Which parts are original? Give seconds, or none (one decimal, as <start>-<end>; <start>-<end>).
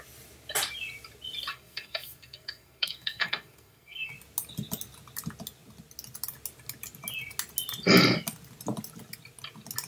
0.0-1.5; 4.1-9.9